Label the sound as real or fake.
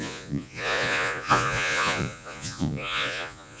fake